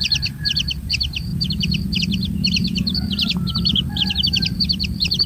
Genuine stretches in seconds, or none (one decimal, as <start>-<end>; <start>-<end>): none